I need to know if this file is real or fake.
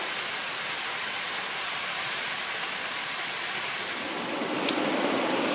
fake